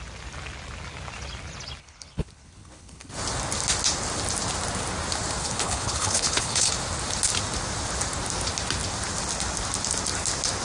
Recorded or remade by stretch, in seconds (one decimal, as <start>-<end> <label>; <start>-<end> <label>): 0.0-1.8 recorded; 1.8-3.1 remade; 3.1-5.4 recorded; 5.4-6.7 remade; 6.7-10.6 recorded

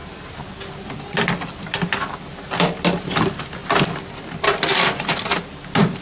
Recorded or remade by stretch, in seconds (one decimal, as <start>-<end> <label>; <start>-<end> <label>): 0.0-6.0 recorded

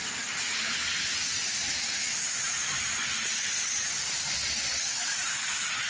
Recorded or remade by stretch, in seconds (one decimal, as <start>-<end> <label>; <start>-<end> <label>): 0.0-5.9 recorded